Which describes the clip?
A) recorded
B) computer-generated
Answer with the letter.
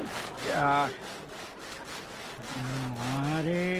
A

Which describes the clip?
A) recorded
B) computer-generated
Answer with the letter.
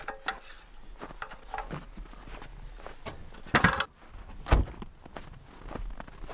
A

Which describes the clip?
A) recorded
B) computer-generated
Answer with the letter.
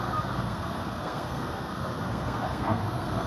B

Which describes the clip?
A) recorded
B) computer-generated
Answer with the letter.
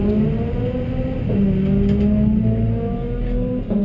A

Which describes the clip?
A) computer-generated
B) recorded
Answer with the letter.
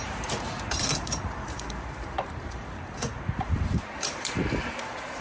A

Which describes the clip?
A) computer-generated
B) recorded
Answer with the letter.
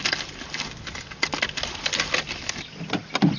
B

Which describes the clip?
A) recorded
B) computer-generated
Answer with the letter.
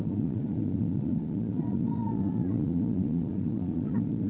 B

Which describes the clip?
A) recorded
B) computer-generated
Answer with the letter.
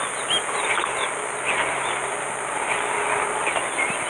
A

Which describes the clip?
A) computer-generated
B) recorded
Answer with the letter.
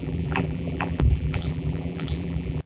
A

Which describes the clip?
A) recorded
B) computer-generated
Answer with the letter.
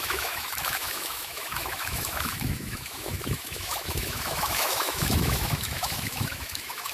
B